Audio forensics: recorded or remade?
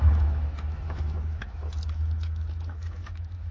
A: remade